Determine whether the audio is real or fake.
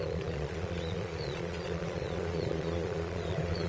fake